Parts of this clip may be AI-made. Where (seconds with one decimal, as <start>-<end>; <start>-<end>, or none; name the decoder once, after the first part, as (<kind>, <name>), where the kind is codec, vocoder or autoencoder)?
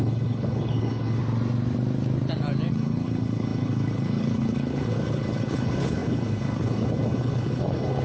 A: 0.0-1.2 (codec, HILCodec); 2.7-8.0